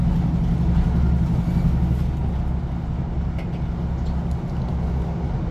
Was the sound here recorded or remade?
recorded